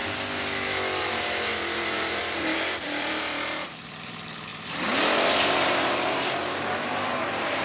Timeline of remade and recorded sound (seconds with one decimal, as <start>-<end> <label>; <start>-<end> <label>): 0.0-1.0 recorded; 1.0-7.6 remade